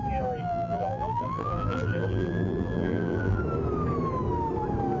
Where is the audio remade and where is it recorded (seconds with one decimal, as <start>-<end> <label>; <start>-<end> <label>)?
0.0-0.4 recorded; 0.4-3.4 remade; 3.4-5.0 recorded